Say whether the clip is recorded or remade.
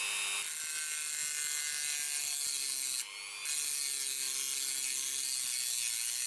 recorded